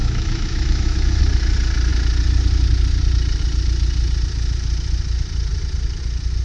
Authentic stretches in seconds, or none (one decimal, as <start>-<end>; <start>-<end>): 1.2-6.4